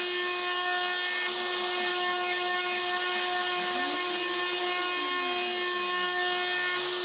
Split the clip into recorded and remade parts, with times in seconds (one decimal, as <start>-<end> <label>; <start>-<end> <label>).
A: 0.0-1.9 recorded; 1.9-2.8 remade; 2.8-7.0 recorded